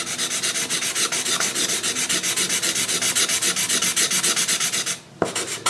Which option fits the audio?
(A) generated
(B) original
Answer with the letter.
B